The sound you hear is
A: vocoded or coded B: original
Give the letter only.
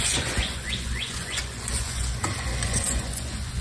A